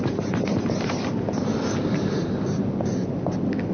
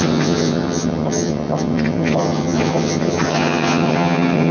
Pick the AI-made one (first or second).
second